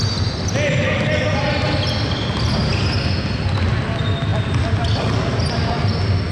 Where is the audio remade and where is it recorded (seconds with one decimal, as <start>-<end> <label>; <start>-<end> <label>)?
0.0-6.3 recorded